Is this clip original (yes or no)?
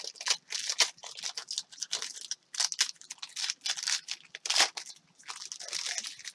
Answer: yes